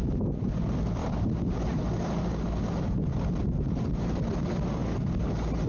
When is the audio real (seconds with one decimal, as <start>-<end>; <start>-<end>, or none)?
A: 0.0-5.7